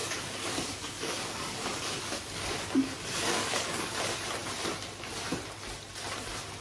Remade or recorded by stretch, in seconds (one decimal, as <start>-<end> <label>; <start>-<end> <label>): 0.0-4.0 remade; 4.0-6.6 recorded